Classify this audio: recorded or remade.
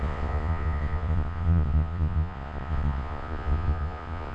remade